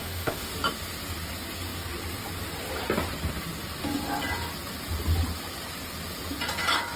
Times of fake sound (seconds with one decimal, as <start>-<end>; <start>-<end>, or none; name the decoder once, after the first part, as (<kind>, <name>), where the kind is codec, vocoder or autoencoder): 0.0-0.5 (autoencoder, DAC-VAE)